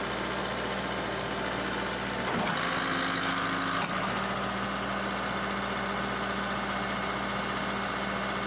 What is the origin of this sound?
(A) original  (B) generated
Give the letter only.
A